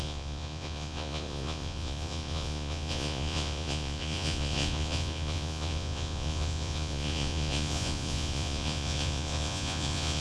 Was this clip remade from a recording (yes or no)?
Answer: yes